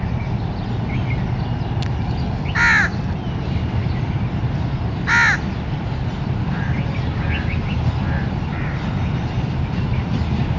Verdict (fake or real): real